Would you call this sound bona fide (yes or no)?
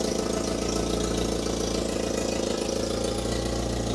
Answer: yes